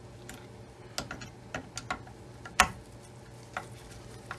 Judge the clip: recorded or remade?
recorded